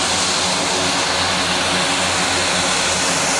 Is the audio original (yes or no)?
yes